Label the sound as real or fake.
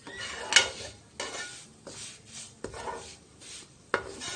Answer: real